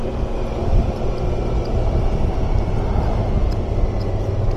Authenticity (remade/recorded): recorded